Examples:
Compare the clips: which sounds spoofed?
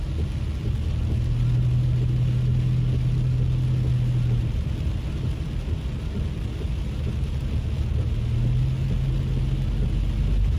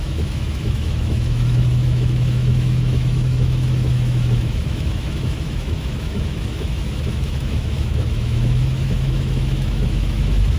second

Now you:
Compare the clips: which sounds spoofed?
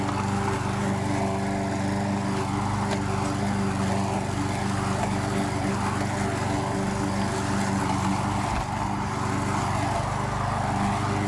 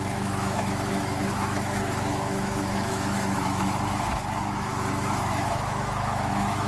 second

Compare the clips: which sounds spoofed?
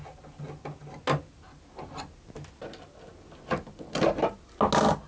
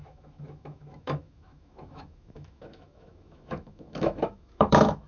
second